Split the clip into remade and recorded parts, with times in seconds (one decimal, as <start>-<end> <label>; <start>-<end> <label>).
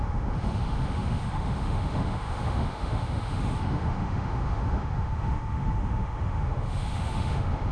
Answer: 0.0-7.7 remade